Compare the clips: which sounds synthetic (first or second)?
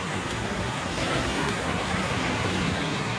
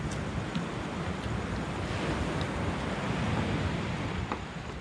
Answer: first